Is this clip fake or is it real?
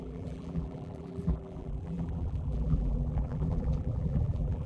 fake